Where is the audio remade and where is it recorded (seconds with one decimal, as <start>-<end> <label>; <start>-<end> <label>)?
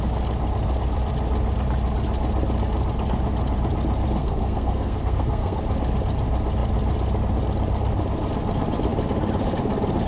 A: 0.0-4.2 recorded; 4.2-5.6 remade; 5.6-10.1 recorded